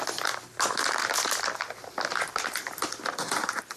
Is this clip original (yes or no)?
yes